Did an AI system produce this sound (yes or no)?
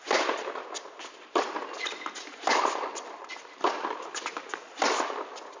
no